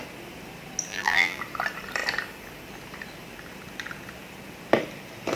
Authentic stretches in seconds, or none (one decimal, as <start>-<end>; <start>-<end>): 0.0-0.9; 1.4-5.4